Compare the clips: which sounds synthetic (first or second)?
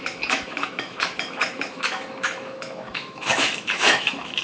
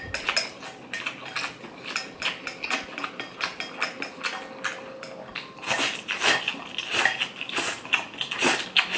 first